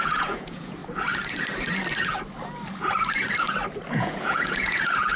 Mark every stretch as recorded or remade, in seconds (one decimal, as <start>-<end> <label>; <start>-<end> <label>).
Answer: 0.0-0.8 remade; 0.8-3.9 recorded; 3.9-5.2 remade

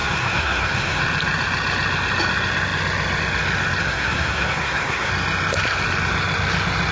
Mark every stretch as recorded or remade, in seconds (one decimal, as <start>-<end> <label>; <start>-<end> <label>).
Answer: 0.0-1.0 remade; 1.0-3.8 recorded; 3.8-5.1 remade; 5.1-6.9 recorded

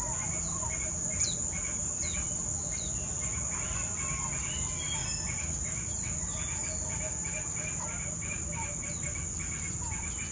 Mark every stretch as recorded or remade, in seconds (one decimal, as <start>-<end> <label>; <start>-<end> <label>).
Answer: 0.0-10.3 recorded

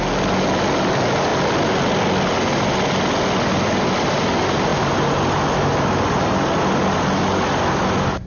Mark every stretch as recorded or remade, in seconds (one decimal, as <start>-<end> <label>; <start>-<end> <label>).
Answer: 0.0-8.3 recorded